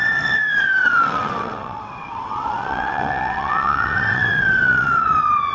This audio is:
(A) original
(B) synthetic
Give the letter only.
B